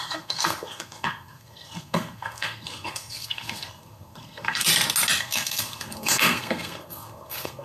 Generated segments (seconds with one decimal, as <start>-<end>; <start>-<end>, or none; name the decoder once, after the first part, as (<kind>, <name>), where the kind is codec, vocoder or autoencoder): 0.0-4.7 (codec, SNAC); 5.2-7.6